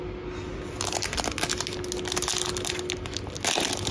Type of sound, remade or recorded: recorded